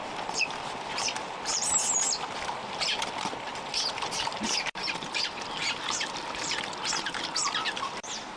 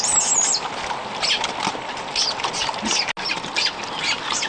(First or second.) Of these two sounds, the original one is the second